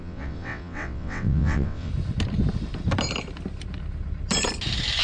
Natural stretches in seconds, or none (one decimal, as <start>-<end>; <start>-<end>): 1.9-5.0